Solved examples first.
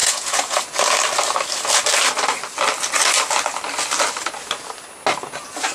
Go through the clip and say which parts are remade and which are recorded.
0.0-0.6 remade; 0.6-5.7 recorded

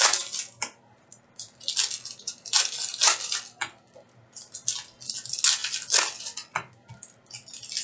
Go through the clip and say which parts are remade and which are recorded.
0.0-7.8 recorded